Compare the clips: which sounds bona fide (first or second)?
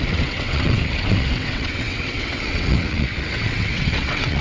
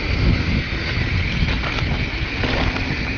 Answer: second